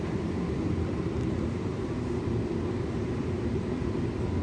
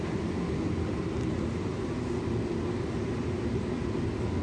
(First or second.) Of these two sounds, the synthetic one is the first